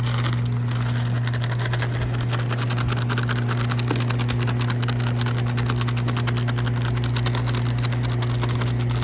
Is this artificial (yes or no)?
no